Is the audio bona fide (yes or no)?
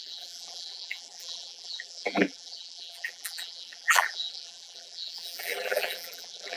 no